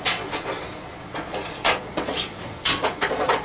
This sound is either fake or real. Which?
fake